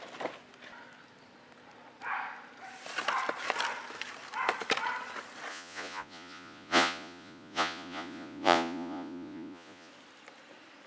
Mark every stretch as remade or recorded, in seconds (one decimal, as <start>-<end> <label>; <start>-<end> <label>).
0.0-5.5 recorded; 5.5-9.9 remade; 9.9-10.9 recorded